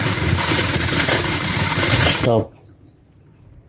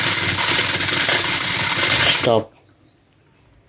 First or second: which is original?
second